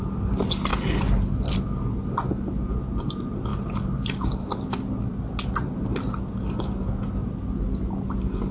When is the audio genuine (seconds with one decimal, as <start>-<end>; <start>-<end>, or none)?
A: 0.0-8.5